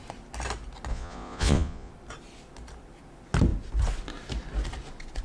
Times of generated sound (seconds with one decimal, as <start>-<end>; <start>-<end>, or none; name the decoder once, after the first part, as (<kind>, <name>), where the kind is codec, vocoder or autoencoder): 0.9-1.9 (vocoder, Vocos)